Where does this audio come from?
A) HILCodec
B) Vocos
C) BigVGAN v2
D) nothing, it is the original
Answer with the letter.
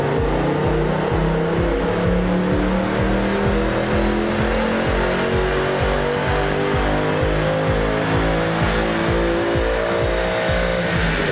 D